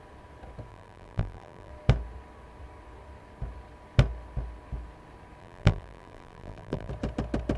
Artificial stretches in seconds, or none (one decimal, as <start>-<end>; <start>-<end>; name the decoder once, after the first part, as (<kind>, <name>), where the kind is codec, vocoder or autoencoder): 0.7-1.7 (vocoder, BigVGAN v2); 5.4-6.9